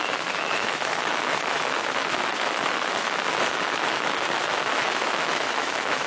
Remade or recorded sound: remade